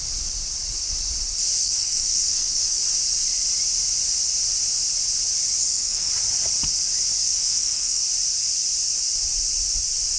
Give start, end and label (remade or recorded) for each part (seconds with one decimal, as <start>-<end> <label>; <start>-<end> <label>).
0.0-1.6 recorded; 1.6-2.8 remade; 2.8-5.6 recorded; 5.6-6.1 remade; 6.1-7.2 recorded; 7.2-8.0 remade; 8.0-10.2 recorded